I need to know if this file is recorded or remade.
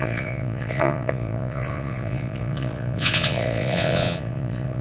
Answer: remade